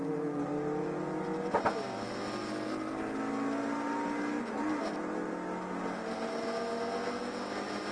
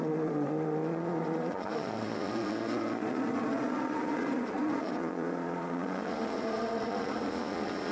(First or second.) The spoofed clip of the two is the second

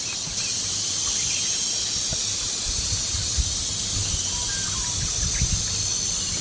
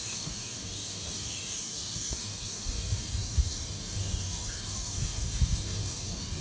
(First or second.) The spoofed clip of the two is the second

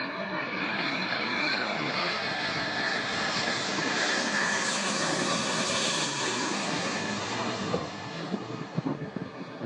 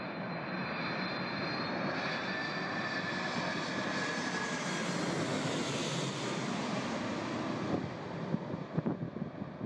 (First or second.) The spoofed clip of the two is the first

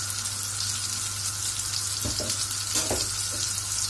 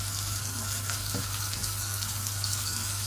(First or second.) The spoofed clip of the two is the second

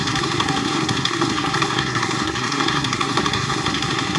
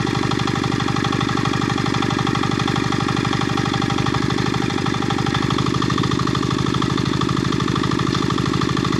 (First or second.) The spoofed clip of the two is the first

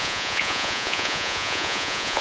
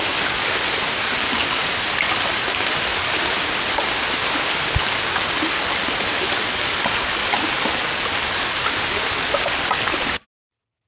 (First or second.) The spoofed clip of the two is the first